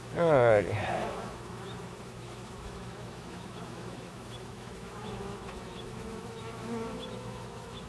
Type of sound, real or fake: fake